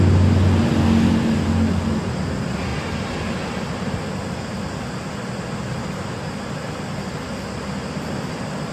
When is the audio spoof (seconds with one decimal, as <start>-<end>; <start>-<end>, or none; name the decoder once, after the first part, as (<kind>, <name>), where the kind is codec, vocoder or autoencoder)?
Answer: none